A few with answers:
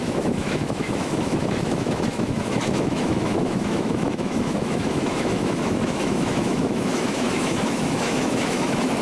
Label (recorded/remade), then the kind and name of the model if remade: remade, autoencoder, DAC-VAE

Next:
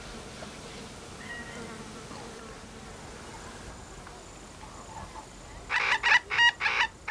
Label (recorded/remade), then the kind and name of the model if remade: recorded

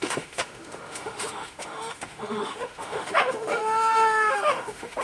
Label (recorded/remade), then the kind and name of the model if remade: remade, autoencoder, DAC-VAE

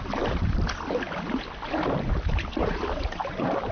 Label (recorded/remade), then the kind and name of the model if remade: recorded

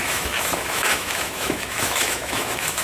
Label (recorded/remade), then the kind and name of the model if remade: remade, autoencoder, DAC-VAE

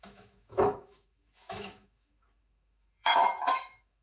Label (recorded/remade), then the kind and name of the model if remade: remade, autoencoder, DAC-VAE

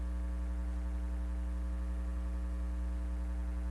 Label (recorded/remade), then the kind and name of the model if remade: recorded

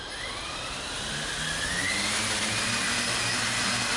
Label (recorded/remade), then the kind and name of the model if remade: recorded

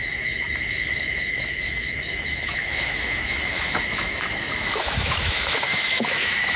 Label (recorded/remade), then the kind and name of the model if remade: remade, autoencoder, DAC-VAE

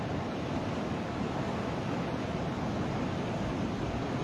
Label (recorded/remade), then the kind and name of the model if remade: recorded